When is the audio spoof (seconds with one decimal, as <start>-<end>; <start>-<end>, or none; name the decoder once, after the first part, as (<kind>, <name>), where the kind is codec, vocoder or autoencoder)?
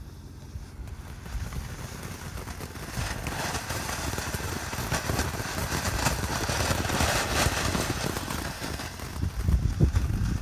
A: none